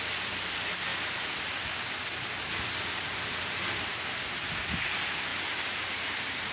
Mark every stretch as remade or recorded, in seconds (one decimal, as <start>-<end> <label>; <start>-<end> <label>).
0.0-5.3 recorded; 5.3-6.1 remade; 6.1-6.5 recorded